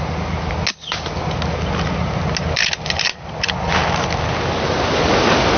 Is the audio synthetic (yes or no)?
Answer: no